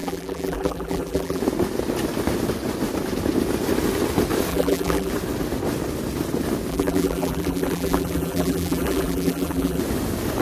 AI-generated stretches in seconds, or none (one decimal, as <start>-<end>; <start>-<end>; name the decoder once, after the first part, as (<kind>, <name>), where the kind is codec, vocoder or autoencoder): 0.0-1.4 (vocoder, BigVGAN v2); 4.5-5.1; 6.7-9.8